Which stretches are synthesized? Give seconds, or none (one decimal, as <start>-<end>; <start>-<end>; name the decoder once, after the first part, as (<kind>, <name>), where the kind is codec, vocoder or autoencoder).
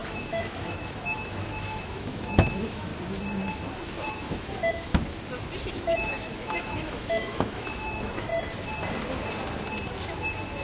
0.0-2.9 (autoencoder, DAC-VAE); 4.1-4.9; 5.7-8.3